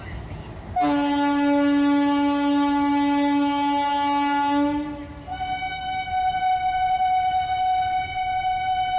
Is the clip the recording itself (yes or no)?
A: yes